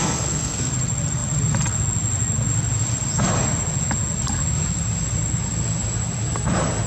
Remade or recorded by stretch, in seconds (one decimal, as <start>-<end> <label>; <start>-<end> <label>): 0.0-0.7 remade; 0.7-6.9 recorded